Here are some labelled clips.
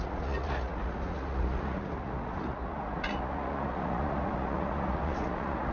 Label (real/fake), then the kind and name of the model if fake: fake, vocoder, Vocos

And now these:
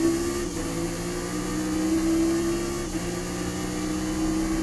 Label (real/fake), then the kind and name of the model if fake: real